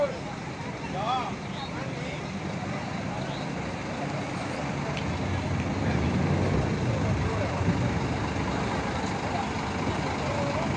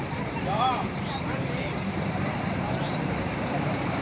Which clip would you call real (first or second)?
first